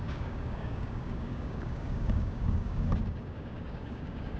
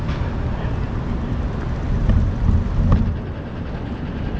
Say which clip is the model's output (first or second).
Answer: first